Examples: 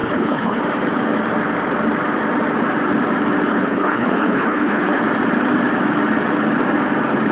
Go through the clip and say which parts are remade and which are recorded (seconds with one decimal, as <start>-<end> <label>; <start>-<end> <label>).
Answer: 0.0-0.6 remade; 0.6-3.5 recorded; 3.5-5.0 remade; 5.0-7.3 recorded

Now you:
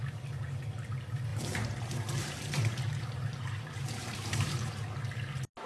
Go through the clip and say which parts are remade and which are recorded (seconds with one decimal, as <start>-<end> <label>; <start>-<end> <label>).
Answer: 0.0-1.3 recorded; 1.3-4.7 remade; 4.7-5.7 recorded

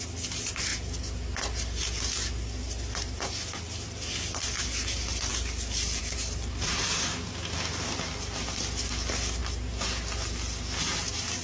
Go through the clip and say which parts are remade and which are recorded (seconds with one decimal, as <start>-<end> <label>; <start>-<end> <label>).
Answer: 0.0-11.4 recorded